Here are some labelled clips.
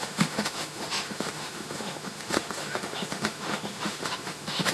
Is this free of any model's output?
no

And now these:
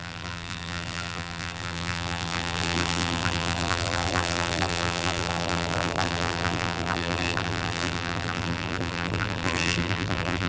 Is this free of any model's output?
no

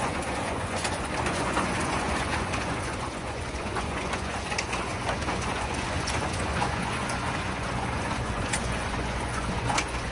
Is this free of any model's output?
no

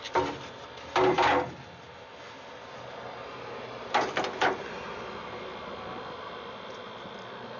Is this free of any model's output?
yes